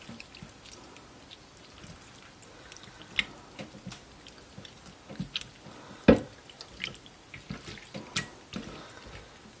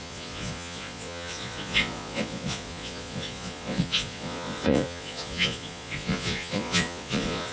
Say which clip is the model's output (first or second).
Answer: second